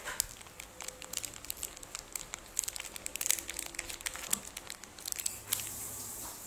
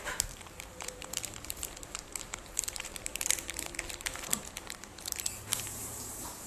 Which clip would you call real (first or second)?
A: first